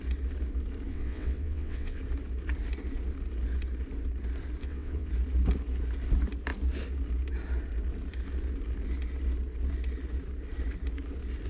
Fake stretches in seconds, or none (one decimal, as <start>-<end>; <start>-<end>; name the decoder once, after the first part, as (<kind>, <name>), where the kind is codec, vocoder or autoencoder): 0.9-2.0 (vocoder, WaveNeXt); 4.6-5.1